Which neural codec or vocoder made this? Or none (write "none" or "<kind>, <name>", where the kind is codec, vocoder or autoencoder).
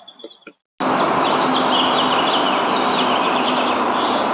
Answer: none